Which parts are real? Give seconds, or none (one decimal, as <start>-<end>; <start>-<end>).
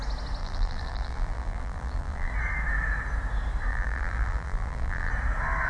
0.0-0.4; 2.3-3.7; 5.1-5.7